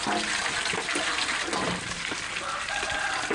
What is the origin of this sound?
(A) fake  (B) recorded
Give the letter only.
B